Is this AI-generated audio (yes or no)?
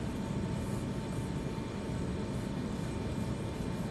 no